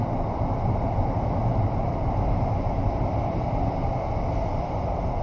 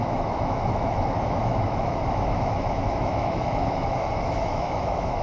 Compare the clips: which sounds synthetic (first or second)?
second